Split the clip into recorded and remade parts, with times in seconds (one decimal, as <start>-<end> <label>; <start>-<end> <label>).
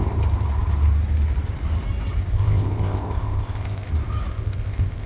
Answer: 0.0-2.3 recorded; 2.3-3.9 remade; 3.9-4.3 recorded; 4.3-5.1 remade